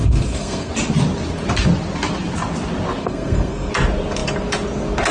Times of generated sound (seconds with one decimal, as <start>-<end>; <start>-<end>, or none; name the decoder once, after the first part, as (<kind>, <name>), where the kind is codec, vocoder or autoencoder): 0.0-0.7 (codec, SNAC); 3.0-3.7